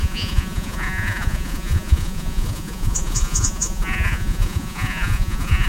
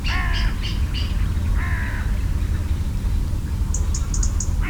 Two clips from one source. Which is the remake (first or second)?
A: first